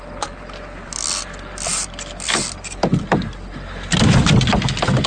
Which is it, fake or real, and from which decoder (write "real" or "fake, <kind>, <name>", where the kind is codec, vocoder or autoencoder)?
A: fake, vocoder, BigVGAN v2